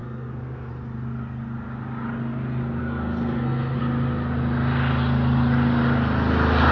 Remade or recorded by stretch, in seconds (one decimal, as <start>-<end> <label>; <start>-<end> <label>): 0.0-0.7 remade; 0.7-2.8 recorded; 2.8-3.8 remade; 3.8-6.7 recorded